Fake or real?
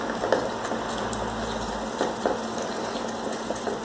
real